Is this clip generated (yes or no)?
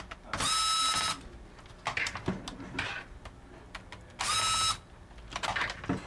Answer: no